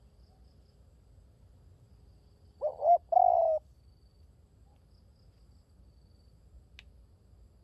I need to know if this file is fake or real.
real